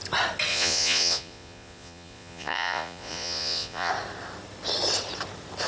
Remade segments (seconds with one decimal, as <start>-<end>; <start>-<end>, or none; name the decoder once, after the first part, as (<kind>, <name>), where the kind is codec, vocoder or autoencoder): 0.5-3.9 (vocoder, Vocos)